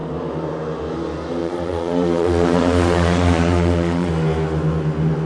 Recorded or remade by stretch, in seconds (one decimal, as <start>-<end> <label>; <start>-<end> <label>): 0.0-1.4 recorded; 1.4-4.1 remade; 4.1-5.3 recorded

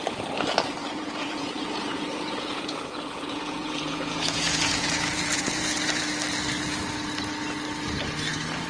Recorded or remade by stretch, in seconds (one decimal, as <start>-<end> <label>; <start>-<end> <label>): 0.0-0.8 recorded; 0.8-6.0 remade; 6.0-8.7 recorded